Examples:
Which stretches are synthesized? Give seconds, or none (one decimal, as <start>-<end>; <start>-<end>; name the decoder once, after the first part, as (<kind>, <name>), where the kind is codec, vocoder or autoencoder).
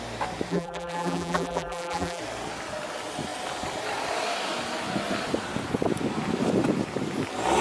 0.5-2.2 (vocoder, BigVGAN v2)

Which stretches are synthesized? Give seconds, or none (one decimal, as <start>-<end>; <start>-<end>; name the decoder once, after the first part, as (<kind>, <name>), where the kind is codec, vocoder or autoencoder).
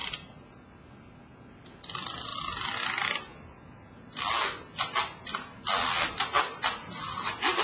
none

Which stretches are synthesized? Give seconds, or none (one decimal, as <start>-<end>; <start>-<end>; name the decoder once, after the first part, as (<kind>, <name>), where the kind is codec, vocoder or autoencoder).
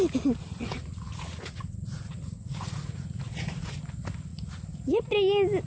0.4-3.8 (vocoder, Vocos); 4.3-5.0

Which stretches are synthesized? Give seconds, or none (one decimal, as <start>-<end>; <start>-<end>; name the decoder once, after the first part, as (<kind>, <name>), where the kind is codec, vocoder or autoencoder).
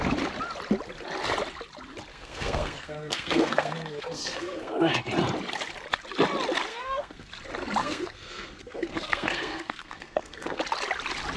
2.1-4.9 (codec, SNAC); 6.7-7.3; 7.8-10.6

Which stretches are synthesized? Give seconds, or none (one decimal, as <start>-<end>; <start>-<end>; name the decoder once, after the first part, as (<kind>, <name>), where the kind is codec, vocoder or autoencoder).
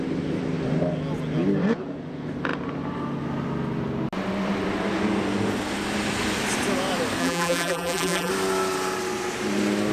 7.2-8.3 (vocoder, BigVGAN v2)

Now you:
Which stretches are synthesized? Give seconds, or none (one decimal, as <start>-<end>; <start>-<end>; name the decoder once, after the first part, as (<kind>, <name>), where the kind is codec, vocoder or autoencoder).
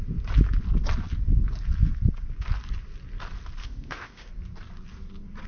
3.6-4.3 (codec, ZipCodec)